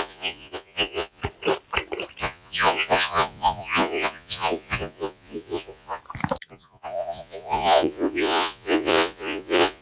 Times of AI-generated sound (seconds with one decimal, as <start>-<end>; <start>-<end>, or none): 0.0-1.2; 2.2-6.0; 6.5-9.8